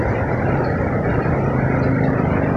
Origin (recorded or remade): recorded